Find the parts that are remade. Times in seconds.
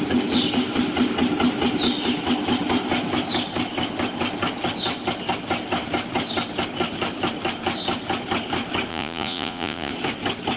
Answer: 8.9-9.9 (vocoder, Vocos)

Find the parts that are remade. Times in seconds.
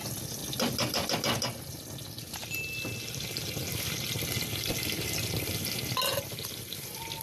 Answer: none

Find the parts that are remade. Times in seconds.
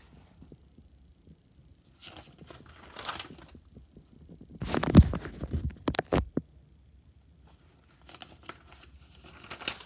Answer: none